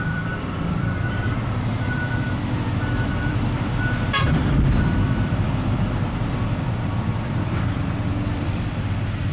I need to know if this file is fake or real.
fake